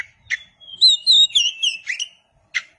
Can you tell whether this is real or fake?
real